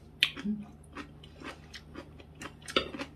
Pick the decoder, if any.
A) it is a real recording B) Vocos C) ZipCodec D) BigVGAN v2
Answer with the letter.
A